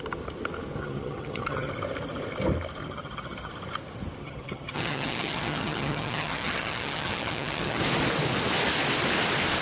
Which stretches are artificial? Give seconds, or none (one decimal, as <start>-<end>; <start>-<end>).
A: 0.8-1.7; 2.8-3.5; 4.2-7.8